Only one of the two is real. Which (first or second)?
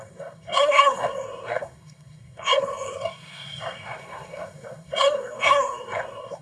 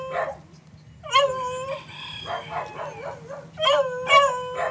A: second